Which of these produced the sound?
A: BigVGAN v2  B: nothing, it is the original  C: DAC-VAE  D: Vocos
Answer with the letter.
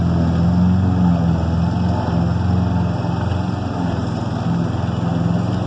B